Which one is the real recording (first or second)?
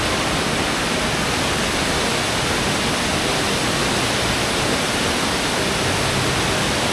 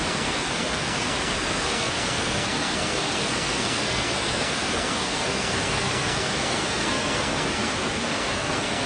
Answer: first